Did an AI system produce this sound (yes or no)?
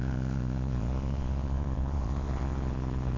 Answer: yes